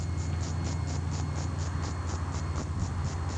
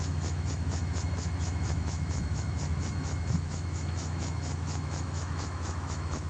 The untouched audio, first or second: first